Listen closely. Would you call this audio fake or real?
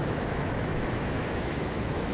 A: fake